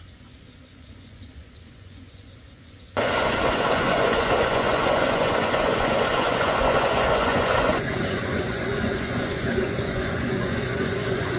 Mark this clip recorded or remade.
remade